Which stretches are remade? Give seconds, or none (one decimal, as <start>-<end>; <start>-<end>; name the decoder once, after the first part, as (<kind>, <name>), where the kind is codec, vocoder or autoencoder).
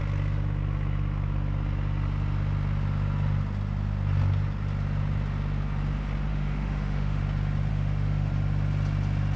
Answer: 6.3-7.2 (autoencoder, DAC-VAE); 7.7-8.3